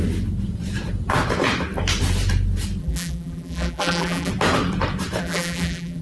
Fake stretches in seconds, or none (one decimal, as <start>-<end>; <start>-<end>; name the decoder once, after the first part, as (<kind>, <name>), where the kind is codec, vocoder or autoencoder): 2.8-4.3 (vocoder, BigVGAN v2); 5.2-6.0